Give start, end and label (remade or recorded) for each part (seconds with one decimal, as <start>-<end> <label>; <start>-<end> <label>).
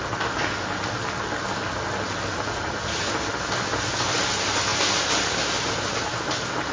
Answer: 0.0-2.3 recorded; 2.3-3.1 remade; 3.1-6.7 recorded